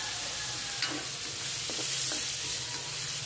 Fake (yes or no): no